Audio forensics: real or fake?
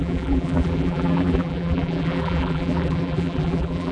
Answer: fake